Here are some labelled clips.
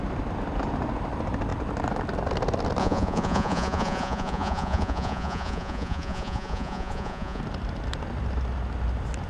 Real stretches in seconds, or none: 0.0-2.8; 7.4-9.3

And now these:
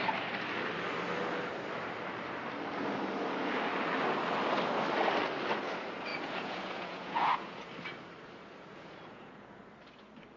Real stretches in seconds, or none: 0.0-6.1; 7.7-8.7; 9.6-10.4